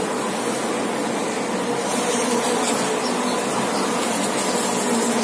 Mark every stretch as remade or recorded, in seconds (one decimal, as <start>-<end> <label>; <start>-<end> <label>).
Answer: 0.0-5.2 recorded